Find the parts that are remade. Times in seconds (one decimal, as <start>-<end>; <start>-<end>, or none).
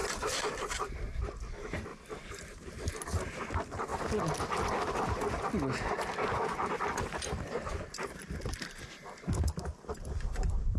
1.9-2.9